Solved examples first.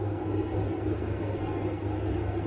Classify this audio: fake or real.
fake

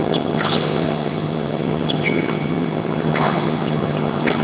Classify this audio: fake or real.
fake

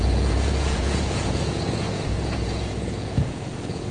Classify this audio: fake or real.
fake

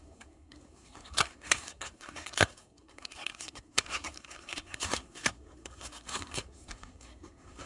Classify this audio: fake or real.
fake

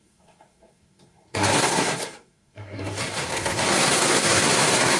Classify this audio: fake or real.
fake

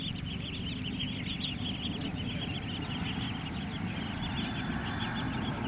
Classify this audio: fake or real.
real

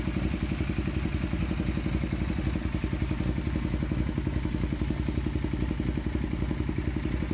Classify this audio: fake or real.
real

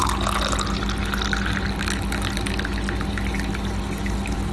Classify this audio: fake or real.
real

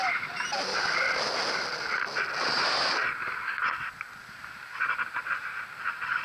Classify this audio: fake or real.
real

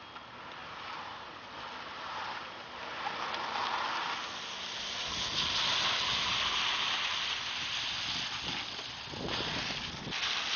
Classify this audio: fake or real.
real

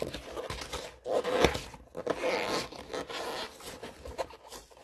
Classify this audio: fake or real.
real